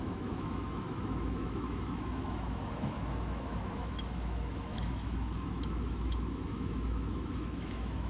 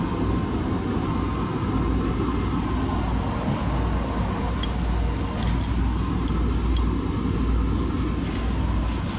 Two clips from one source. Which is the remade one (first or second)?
first